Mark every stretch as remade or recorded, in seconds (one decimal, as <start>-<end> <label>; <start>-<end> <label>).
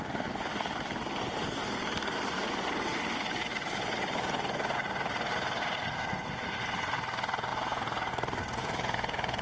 0.0-7.5 recorded; 7.5-8.1 remade; 8.1-8.6 recorded; 8.6-9.4 remade